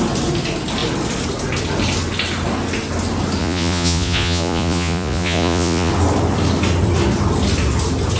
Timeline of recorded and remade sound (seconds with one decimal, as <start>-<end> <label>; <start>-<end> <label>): 0.0-3.4 recorded; 3.4-5.9 remade; 5.9-8.2 recorded